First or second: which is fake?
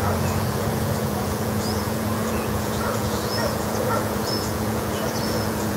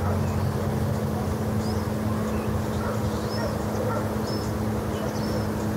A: first